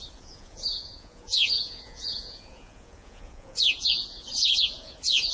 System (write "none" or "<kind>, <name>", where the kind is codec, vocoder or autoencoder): vocoder, Vocos